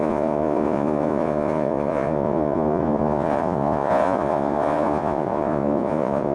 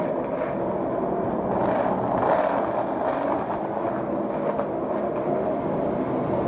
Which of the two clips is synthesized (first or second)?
first